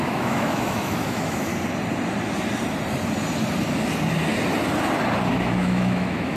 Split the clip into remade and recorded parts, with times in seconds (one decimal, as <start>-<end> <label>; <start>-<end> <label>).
0.0-1.5 remade; 1.5-5.3 recorded; 5.3-6.4 remade